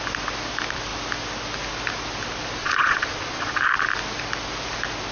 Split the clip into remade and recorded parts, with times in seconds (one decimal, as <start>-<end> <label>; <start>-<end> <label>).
0.0-2.6 recorded; 2.6-3.6 remade; 3.6-5.1 recorded